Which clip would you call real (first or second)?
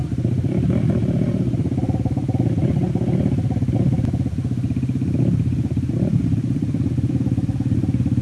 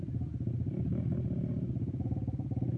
second